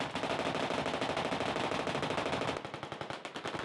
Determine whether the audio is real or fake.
real